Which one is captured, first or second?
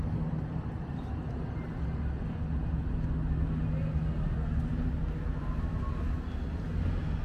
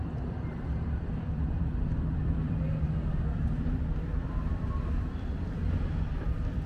first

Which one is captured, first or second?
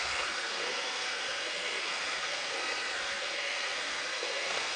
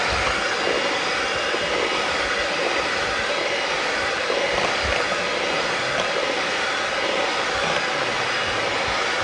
second